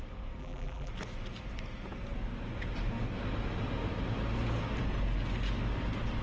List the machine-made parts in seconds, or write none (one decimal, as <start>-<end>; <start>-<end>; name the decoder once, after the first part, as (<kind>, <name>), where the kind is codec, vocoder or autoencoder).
0.4-0.9 (vocoder, BigVGAN v2)